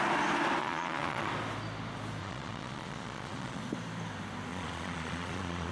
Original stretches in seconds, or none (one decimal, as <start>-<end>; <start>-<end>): 0.0-0.6; 1.3-2.2; 3.6-4.5